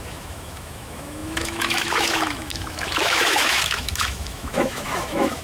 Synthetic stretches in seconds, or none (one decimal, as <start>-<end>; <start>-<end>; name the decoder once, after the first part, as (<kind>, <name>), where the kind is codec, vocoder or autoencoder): 0.0-5.4 (autoencoder, DAC-VAE)